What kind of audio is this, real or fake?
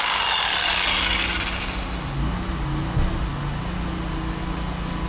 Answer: real